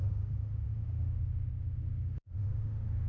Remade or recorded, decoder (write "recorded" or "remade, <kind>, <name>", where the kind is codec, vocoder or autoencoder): remade, autoencoder, DAC-VAE